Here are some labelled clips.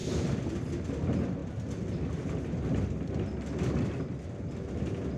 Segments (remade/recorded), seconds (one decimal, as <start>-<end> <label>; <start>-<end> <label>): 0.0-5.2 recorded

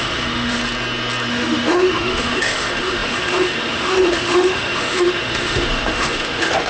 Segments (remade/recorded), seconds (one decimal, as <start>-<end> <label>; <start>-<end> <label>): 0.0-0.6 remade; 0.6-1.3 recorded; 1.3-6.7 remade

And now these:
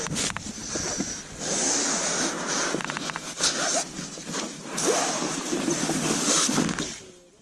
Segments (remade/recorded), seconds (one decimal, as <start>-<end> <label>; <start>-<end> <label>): 0.0-5.8 recorded; 5.8-6.8 remade; 6.8-7.4 recorded